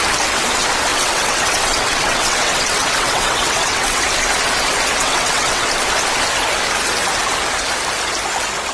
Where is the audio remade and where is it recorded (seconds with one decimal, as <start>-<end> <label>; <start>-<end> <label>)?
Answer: 0.0-0.9 recorded; 0.9-4.0 remade; 4.0-5.0 recorded; 5.0-5.7 remade; 5.7-8.7 recorded